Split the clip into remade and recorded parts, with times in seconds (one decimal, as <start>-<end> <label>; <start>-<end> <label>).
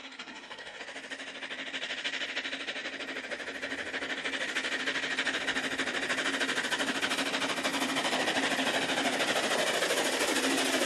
0.0-0.8 remade; 0.8-10.9 recorded